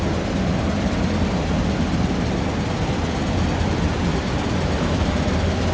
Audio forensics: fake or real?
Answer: real